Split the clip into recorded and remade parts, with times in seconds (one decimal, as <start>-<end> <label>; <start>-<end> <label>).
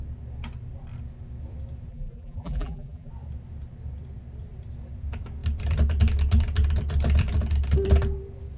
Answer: 0.0-1.9 recorded; 1.9-3.1 remade; 3.1-8.6 recorded